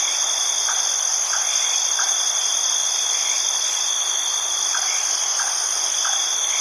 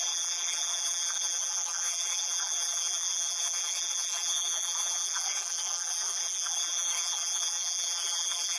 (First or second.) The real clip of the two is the first